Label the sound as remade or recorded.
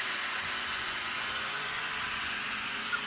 remade